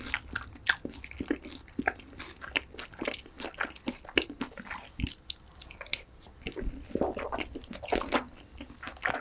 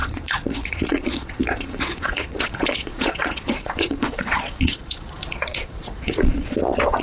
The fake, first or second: second